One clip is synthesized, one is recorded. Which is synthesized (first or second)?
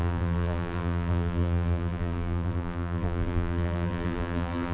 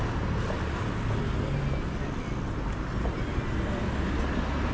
first